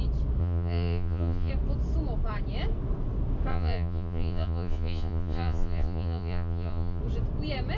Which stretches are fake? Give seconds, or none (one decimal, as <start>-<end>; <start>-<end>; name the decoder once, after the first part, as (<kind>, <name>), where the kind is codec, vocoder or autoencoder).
0.4-1.5 (vocoder, Vocos); 3.5-7.0